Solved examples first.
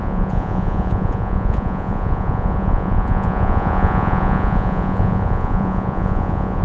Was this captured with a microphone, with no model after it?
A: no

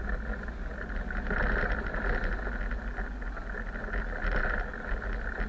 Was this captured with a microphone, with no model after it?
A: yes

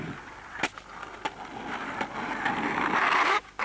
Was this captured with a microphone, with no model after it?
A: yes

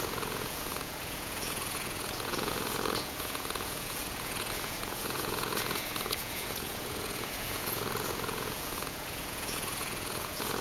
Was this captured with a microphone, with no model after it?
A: no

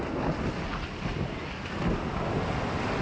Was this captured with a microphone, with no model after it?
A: yes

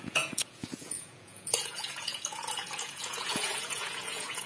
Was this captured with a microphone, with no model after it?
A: no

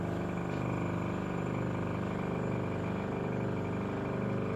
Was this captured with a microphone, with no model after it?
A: yes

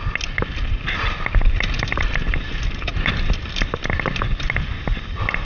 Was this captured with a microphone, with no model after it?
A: yes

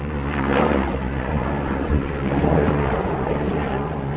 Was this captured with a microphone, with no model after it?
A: no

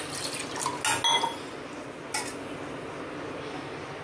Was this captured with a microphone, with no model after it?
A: yes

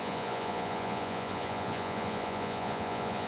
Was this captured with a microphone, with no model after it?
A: no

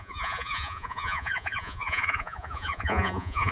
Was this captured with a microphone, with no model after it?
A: no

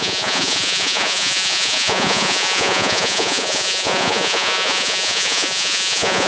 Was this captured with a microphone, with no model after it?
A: no